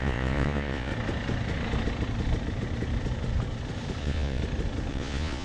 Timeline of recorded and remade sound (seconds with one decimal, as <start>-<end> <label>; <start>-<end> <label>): 0.0-0.9 remade; 0.9-4.0 recorded; 4.0-4.4 remade; 4.4-4.9 recorded; 4.9-5.4 remade

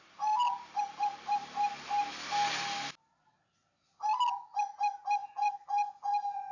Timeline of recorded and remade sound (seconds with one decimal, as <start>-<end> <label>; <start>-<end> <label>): 0.0-5.2 recorded; 5.2-6.5 remade

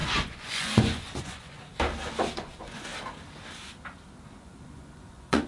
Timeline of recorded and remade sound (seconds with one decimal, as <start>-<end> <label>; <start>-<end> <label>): 0.0-1.7 remade; 1.7-2.3 recorded; 2.3-2.9 remade; 2.9-4.3 recorded; 4.3-5.5 remade

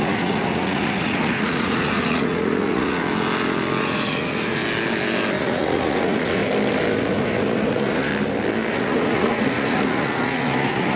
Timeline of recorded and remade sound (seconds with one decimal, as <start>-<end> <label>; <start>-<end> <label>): 0.0-3.0 remade; 3.0-3.8 recorded; 3.8-4.6 remade; 4.6-5.4 recorded; 5.4-6.4 remade; 6.4-7.0 recorded; 7.0-8.1 remade; 8.1-8.7 recorded; 8.7-11.0 remade

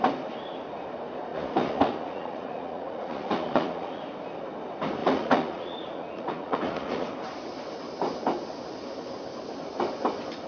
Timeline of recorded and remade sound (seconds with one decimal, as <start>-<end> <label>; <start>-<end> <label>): 0.0-1.3 recorded; 1.3-4.0 remade; 4.0-5.0 recorded; 5.0-7.1 remade; 7.1-10.5 recorded

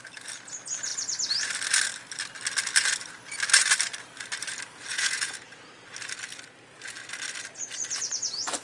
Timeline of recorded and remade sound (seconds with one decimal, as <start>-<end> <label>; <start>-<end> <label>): 0.0-4.9 recorded; 4.9-5.7 remade; 5.7-8.6 recorded

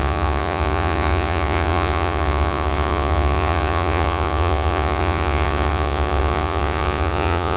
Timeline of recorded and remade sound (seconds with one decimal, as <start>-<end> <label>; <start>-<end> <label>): 0.0-7.6 remade

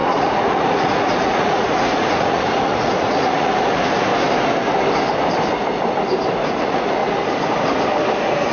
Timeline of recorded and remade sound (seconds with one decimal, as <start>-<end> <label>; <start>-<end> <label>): 0.0-4.1 remade; 4.1-6.6 recorded; 6.6-7.0 remade; 7.0-8.5 recorded